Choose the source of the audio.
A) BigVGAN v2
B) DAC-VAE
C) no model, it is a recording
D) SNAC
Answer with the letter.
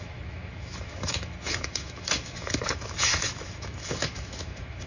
B